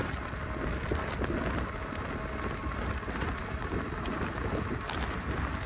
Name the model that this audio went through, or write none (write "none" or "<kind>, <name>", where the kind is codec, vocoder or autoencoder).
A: none